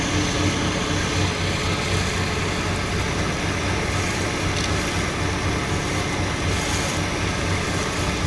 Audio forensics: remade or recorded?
recorded